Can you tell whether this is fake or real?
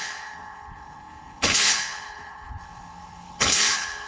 fake